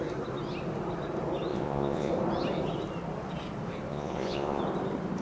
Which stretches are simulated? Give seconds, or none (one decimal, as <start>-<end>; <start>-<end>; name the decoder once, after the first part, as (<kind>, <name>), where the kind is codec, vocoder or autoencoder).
1.5-2.1 (vocoder, Vocos); 3.9-4.6